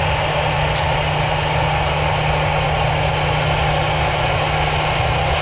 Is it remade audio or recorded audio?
recorded